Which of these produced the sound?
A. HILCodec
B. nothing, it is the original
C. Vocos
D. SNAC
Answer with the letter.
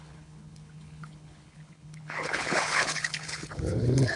A